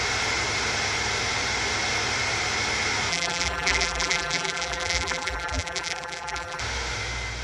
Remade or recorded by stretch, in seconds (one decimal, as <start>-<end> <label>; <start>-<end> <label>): 0.0-3.1 recorded; 3.1-6.6 remade; 6.6-7.4 recorded